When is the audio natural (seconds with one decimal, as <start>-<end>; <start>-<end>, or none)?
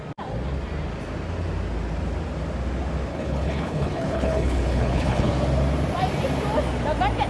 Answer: 0.0-3.1; 5.3-7.3